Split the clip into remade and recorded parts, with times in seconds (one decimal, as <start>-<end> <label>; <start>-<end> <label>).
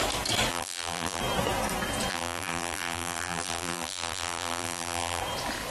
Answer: 0.0-0.5 recorded; 0.5-1.2 remade; 1.2-2.1 recorded; 2.1-5.2 remade; 5.2-5.7 recorded